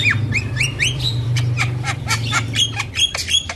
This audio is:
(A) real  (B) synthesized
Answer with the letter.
B